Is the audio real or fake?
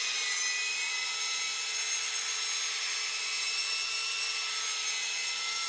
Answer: real